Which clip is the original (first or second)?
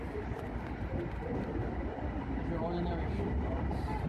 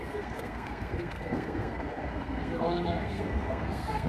first